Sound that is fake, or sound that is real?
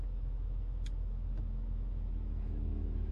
fake